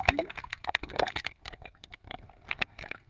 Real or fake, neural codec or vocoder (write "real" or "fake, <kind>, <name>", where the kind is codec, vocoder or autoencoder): fake, codec, SNAC